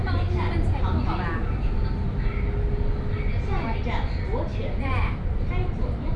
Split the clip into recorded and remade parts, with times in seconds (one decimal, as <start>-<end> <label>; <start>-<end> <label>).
0.0-6.2 recorded